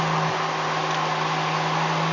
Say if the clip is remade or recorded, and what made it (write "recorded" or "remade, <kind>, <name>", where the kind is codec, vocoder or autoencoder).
recorded